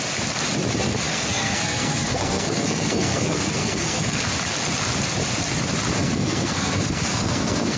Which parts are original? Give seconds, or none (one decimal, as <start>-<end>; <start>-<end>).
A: 0.0-1.1; 4.2-6.0